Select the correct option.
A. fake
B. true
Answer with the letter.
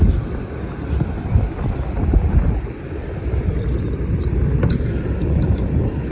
B